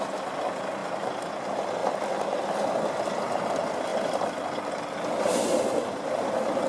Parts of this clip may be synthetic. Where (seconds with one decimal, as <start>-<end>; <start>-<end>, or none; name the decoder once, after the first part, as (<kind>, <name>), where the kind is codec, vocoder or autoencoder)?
none